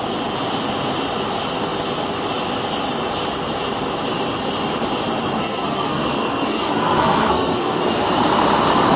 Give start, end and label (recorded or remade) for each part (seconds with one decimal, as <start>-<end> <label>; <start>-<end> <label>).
0.0-5.4 recorded; 5.4-7.8 remade; 7.8-9.0 recorded

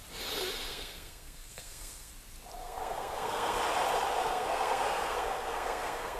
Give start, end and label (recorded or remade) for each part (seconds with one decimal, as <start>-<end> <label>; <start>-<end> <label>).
0.0-0.7 recorded; 0.7-2.1 remade; 2.1-2.6 recorded; 2.6-3.6 remade; 3.6-4.2 recorded; 4.2-6.2 remade

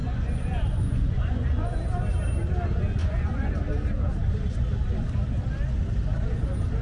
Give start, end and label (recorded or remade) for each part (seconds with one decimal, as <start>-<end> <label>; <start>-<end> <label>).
0.0-1.8 remade; 1.8-3.0 recorded; 3.0-3.5 remade; 3.5-6.8 recorded